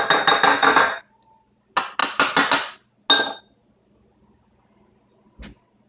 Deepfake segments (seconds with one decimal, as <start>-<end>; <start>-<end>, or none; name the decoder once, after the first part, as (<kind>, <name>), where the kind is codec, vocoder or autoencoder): 0.5-1.0 (codec, SNAC)